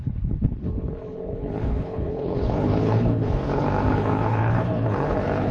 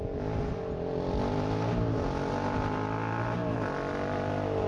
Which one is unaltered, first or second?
second